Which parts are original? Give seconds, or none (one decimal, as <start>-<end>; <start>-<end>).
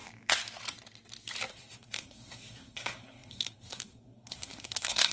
0.0-1.5